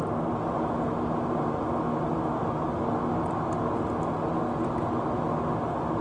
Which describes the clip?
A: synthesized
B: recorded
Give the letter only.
B